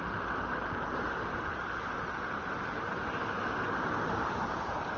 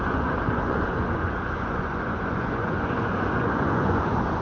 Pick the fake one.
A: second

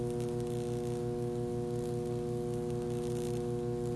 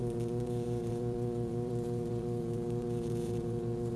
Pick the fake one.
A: second